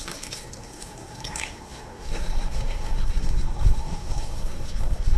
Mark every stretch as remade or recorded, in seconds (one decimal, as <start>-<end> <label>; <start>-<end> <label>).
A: 0.0-5.2 remade